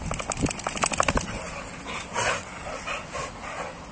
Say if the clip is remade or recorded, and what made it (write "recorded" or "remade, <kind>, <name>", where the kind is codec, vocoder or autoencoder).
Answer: recorded